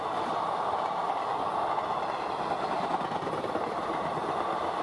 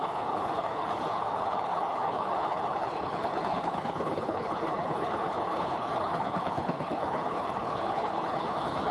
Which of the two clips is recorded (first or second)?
first